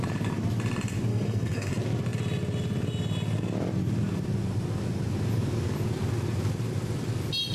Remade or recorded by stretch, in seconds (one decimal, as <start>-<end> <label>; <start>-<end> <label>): 0.0-1.1 recorded; 1.1-1.7 remade; 1.7-7.5 recorded